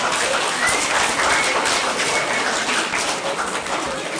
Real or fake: real